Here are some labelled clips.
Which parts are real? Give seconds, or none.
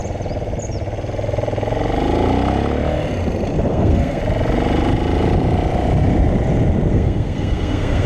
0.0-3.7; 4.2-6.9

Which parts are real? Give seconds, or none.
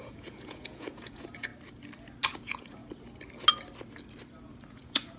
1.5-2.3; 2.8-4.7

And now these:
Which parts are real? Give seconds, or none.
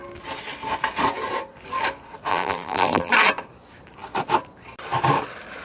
0.0-2.3; 3.1-5.6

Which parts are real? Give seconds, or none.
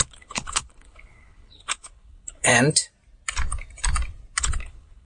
2.5-4.4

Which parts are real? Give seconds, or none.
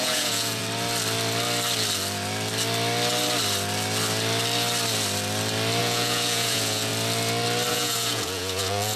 0.6-5.8; 6.9-7.7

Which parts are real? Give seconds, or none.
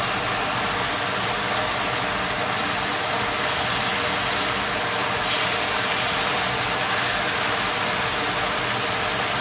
0.0-9.4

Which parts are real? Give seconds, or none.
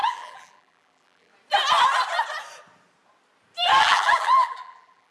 1.3-3.8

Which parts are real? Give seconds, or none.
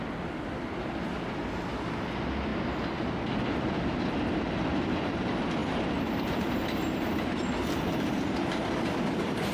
0.0-5.6; 8.9-9.5